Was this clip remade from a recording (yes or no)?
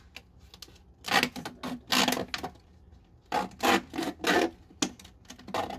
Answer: no